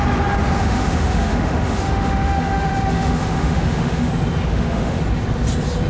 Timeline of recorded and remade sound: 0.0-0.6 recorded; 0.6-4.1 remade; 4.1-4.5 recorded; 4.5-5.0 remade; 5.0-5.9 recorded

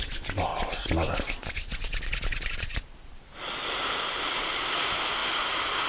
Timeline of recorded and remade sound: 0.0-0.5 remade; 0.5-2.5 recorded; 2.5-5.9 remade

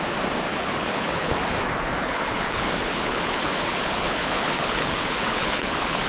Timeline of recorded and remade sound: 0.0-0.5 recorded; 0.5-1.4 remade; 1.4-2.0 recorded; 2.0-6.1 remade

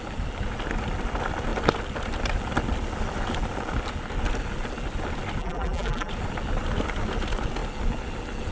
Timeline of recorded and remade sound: 0.0-5.4 recorded; 5.4-6.1 remade; 6.1-8.5 recorded

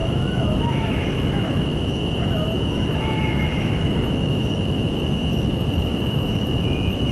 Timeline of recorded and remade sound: 0.0-7.1 remade

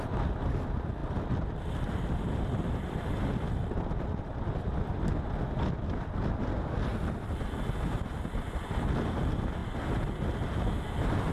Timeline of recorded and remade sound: 0.0-1.0 recorded; 1.0-4.9 remade; 4.9-11.3 recorded